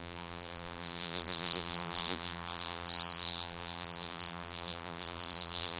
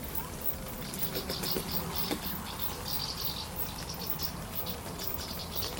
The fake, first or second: first